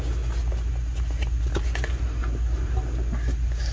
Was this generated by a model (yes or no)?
no